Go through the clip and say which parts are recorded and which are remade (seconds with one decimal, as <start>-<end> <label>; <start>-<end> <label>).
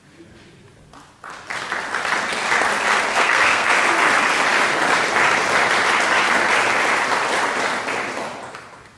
0.0-3.1 recorded; 3.1-3.7 remade; 3.7-9.0 recorded